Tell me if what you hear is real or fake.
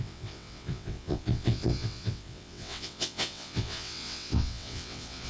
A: fake